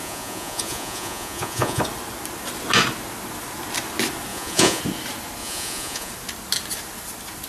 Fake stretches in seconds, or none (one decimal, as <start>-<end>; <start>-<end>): 0.0-1.8; 4.3-4.8; 5.4-6.1